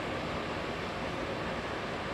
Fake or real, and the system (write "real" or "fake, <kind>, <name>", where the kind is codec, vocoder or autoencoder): real